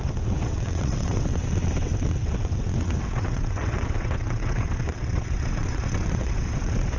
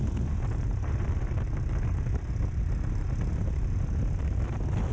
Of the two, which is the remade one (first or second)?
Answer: first